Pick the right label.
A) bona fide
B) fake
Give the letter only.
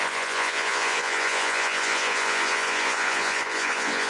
B